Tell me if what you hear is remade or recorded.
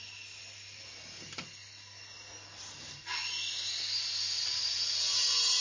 recorded